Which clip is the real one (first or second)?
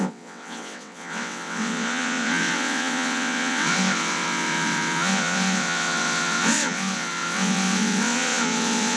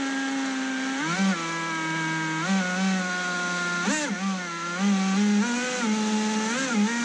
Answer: second